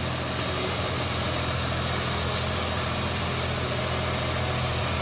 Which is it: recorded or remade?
recorded